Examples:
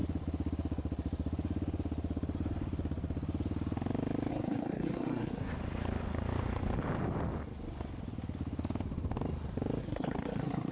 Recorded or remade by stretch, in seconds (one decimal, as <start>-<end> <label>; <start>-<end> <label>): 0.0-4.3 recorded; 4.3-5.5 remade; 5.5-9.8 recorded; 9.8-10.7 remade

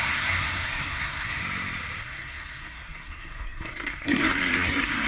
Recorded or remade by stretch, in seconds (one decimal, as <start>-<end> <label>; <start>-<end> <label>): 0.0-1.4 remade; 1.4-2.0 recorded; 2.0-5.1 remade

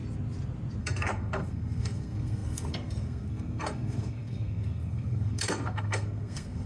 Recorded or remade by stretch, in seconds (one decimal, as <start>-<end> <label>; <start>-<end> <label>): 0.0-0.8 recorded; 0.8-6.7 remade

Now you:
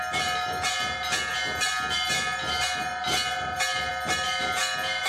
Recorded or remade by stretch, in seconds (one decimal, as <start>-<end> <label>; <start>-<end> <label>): 0.0-5.1 recorded